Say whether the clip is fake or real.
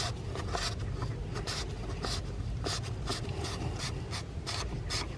real